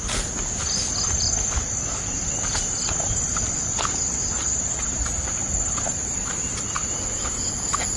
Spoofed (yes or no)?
no